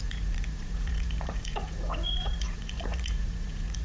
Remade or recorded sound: remade